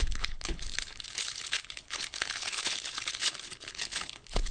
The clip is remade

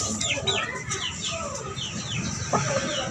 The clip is recorded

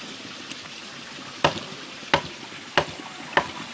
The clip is recorded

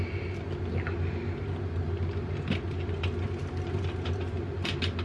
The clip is recorded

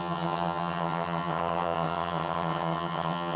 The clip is remade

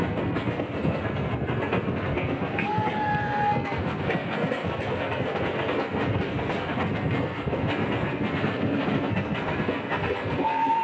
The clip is remade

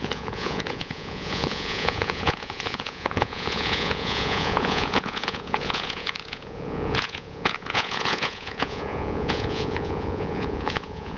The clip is remade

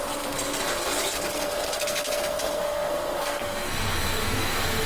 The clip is remade